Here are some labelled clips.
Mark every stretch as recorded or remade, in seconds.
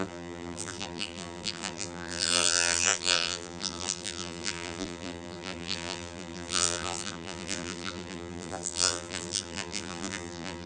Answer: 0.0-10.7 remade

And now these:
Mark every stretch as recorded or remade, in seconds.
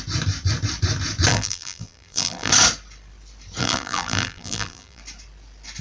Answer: 0.0-1.3 recorded; 1.3-2.5 remade; 2.5-3.6 recorded; 3.6-5.0 remade; 5.0-5.8 recorded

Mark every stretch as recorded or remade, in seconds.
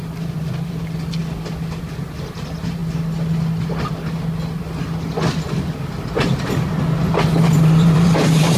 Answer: 0.0-1.2 remade; 1.2-1.8 recorded; 1.8-2.8 remade; 2.8-7.4 recorded; 7.4-8.6 remade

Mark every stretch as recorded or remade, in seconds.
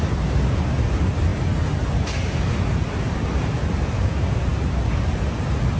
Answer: 0.0-1.3 remade; 1.3-3.0 recorded; 3.0-4.5 remade; 4.5-5.8 recorded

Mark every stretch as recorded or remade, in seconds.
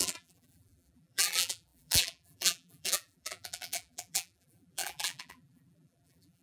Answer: 0.0-6.4 remade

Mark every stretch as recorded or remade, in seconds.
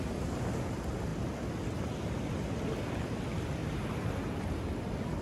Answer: 0.0-3.6 recorded; 3.6-4.4 remade; 4.4-5.2 recorded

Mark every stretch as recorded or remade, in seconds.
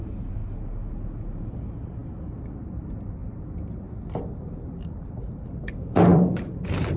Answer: 0.0-0.4 remade; 0.4-1.4 recorded; 1.4-3.2 remade; 3.2-4.4 recorded; 4.4-7.0 remade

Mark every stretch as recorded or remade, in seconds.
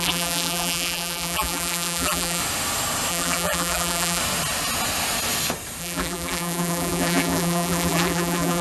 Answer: 0.0-2.4 remade; 2.4-3.1 recorded; 3.1-4.2 remade; 4.2-5.8 recorded; 5.8-8.6 remade